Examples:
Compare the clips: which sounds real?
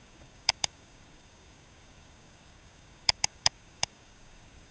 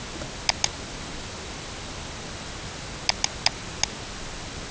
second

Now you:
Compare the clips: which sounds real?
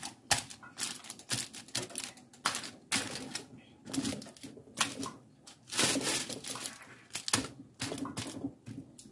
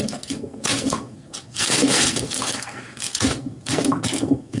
first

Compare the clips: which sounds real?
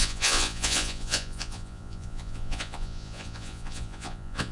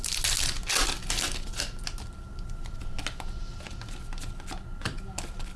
second